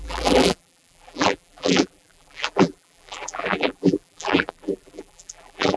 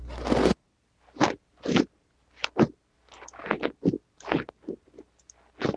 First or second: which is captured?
second